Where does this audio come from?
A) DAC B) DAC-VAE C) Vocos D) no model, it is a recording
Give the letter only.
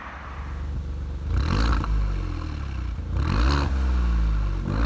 D